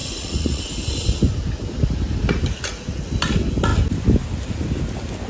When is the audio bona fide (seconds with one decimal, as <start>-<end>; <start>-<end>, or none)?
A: 0.6-5.3